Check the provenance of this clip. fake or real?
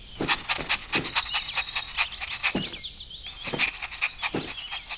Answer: real